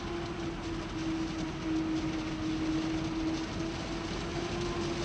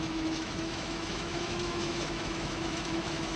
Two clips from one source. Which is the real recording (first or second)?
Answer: first